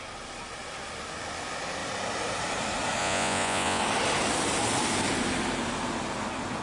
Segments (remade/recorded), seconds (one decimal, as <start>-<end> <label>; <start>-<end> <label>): 0.0-3.0 recorded; 3.0-3.8 remade; 3.8-6.6 recorded